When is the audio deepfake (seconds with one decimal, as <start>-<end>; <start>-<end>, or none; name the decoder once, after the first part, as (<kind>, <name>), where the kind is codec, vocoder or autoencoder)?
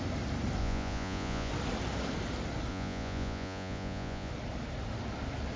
0.6-1.5 (vocoder, Vocos); 2.7-4.3